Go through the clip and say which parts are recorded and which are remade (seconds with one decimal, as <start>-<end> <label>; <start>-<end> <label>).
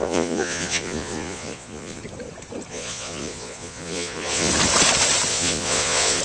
0.0-2.0 remade; 2.0-2.7 recorded; 2.7-4.5 remade; 4.5-5.3 recorded; 5.3-6.2 remade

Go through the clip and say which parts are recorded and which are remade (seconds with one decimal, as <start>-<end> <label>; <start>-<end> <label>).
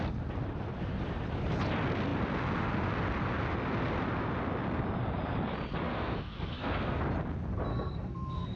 0.0-5.9 recorded; 5.9-7.0 remade; 7.0-7.7 recorded; 7.7-8.6 remade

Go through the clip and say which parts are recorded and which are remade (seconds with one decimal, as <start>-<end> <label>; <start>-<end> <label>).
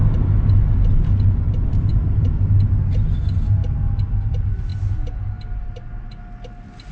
0.0-6.9 recorded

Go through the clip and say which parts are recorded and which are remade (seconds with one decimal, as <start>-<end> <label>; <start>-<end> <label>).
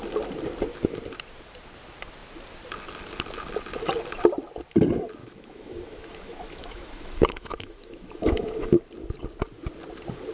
0.0-5.2 recorded; 5.2-8.8 remade; 8.8-10.3 recorded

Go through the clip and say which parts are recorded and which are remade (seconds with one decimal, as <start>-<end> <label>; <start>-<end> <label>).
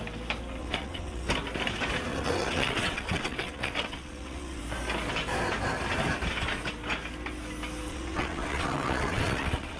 0.0-0.6 recorded; 0.6-1.3 remade; 1.3-2.1 recorded; 2.1-4.6 remade; 4.6-7.9 recorded; 7.9-9.8 remade